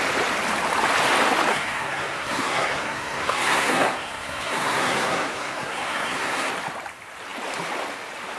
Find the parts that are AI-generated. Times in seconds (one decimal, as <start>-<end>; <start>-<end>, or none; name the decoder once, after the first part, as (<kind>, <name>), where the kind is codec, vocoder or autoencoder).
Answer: 1.5-6.5 (codec, SNAC)